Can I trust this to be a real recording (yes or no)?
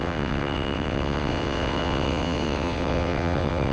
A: no